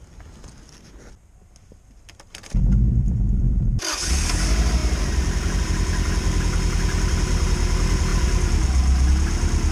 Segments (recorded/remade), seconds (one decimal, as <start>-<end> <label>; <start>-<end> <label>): 0.0-1.6 recorded; 1.6-4.0 remade; 4.0-4.8 recorded; 4.8-5.6 remade; 5.6-9.7 recorded